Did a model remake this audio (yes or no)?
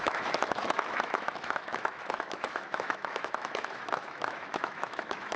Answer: yes